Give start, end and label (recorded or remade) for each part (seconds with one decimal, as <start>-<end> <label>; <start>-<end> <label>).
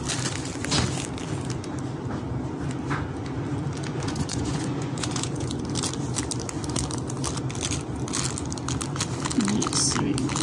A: 0.0-3.9 recorded; 3.9-5.6 remade; 5.6-10.4 recorded